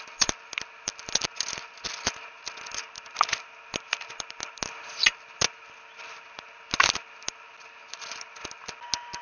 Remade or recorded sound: recorded